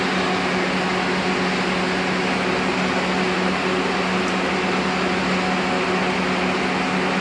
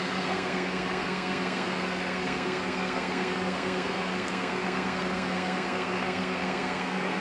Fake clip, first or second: second